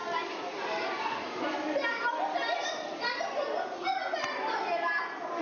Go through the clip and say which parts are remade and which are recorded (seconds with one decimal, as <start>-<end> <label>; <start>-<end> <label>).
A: 0.0-5.4 recorded